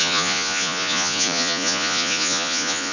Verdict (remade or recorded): remade